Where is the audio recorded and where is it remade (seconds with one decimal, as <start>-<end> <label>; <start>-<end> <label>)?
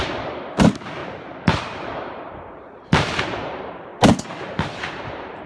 0.0-1.0 remade; 1.0-1.9 recorded; 1.9-3.9 remade; 3.9-4.5 recorded; 4.5-5.5 remade